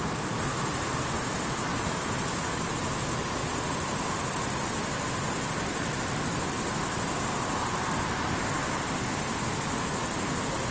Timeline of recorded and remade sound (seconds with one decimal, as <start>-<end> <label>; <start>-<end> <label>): 0.0-1.7 recorded; 1.7-2.7 remade; 2.7-10.7 recorded